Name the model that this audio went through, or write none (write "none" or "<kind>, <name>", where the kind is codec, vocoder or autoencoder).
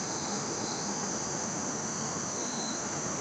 autoencoder, DAC-VAE